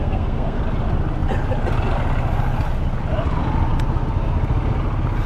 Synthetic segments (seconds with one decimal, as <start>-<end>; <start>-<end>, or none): 0.0-0.6